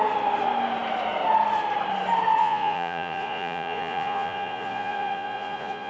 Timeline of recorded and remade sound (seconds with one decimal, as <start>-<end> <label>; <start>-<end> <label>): 0.0-2.4 recorded; 2.4-5.9 remade